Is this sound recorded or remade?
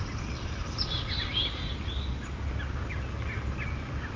recorded